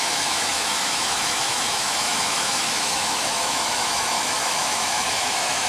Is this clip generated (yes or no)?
yes